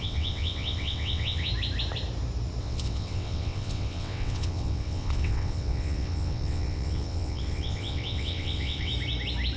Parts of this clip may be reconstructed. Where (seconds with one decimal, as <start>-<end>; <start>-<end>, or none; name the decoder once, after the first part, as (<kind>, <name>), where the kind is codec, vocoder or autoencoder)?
0.0-1.5 (vocoder, WaveNeXt); 2.6-8.9